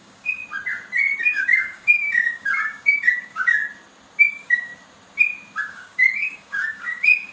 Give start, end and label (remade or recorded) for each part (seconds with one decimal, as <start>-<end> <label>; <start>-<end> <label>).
0.0-0.4 remade; 0.4-1.2 recorded; 1.2-3.6 remade; 3.6-4.3 recorded; 4.3-4.7 remade; 4.7-5.6 recorded; 5.6-7.3 remade